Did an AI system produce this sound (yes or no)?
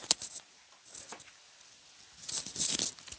no